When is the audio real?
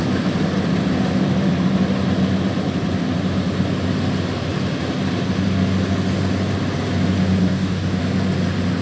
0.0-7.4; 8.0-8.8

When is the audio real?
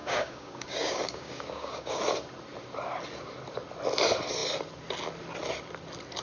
2.0-6.2